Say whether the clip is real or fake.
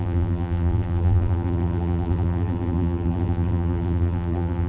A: fake